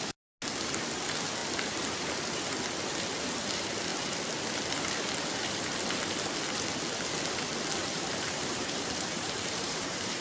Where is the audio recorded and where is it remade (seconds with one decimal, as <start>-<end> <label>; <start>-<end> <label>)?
0.0-7.8 recorded; 7.8-10.2 remade

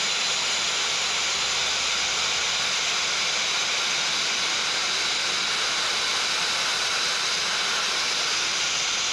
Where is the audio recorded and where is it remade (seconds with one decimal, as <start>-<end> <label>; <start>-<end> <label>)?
0.0-9.1 recorded

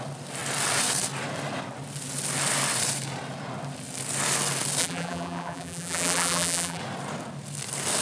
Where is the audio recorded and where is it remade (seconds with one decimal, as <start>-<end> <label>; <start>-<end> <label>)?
0.0-4.8 recorded; 4.8-6.8 remade; 6.8-8.0 recorded

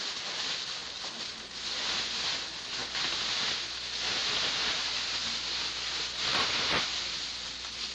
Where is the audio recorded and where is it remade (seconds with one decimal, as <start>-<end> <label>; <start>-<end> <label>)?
0.0-6.3 recorded; 6.3-7.9 remade